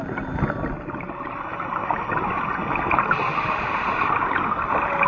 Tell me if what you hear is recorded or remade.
recorded